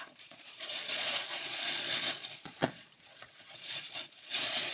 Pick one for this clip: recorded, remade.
remade